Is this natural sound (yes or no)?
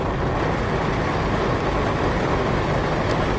yes